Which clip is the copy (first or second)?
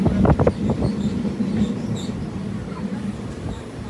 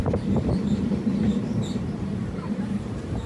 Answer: second